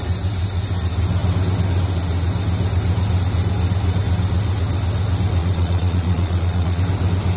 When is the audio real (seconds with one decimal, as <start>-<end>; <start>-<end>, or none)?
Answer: 0.0-5.4; 6.8-7.4